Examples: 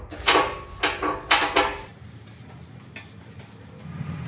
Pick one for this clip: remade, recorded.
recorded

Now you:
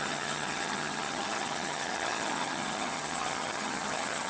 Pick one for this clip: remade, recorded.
remade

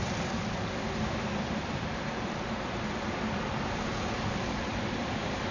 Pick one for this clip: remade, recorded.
recorded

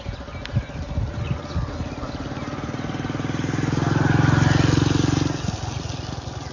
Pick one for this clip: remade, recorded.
recorded